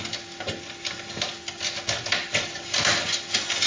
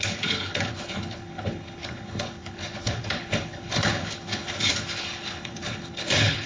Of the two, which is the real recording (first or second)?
first